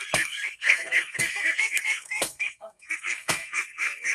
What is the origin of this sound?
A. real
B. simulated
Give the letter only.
B